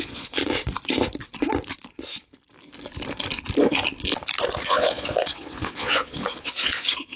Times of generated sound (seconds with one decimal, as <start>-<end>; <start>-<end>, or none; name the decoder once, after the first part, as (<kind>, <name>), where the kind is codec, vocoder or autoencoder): 0.0-0.4 (vocoder, Vocos); 4.7-7.2